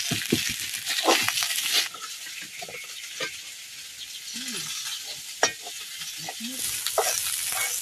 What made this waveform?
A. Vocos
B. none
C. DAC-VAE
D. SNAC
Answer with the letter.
B